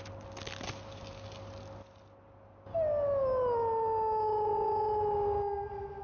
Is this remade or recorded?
recorded